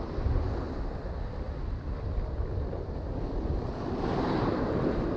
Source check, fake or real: real